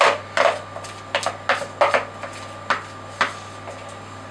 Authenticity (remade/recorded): recorded